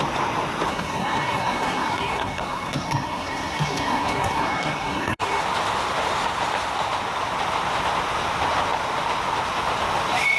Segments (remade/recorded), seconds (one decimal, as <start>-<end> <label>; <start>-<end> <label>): 0.0-0.7 recorded; 0.7-5.4 remade; 5.4-10.4 recorded

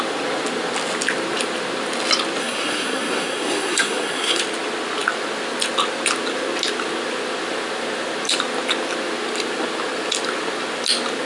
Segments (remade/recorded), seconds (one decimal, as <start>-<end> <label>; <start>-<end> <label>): 0.0-2.4 recorded; 2.4-4.4 remade; 4.4-11.3 recorded

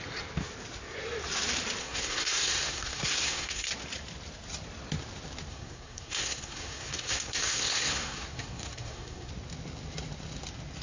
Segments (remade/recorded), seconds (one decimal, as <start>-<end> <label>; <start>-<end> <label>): 0.0-1.8 recorded; 1.8-3.7 remade; 3.7-5.5 recorded; 5.5-9.3 remade; 9.3-10.8 recorded

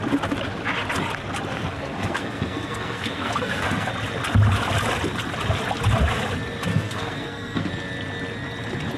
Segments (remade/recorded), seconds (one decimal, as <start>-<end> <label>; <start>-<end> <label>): 0.0-1.5 recorded; 1.5-3.9 remade; 3.9-6.7 recorded; 6.7-7.7 remade; 7.7-9.0 recorded

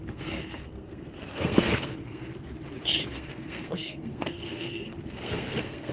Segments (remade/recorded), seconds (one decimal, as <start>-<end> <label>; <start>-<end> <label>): 0.0-2.3 remade; 2.3-3.1 recorded; 3.1-5.9 remade